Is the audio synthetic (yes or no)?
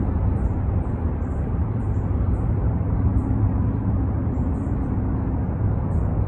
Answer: yes